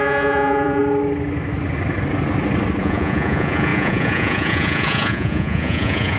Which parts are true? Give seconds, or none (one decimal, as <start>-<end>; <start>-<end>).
0.8-2.8